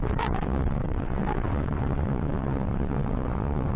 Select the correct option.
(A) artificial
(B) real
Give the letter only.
A